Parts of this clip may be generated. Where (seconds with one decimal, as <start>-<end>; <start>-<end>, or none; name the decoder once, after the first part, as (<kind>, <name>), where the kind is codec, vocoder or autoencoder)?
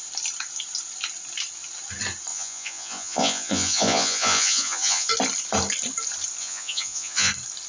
2.3-5.1 (vocoder, Vocos); 6.4-7.3